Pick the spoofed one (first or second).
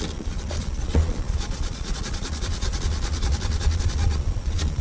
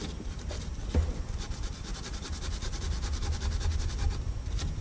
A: first